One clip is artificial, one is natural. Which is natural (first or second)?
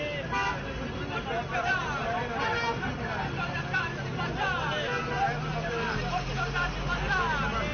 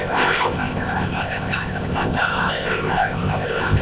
first